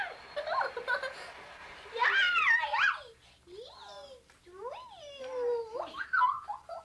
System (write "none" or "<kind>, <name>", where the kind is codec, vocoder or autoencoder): none